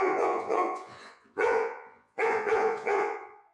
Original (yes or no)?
no